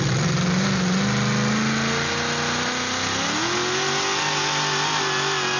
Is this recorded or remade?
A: recorded